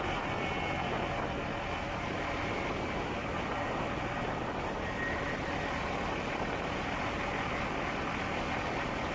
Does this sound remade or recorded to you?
recorded